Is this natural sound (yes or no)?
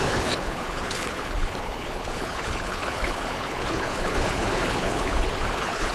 no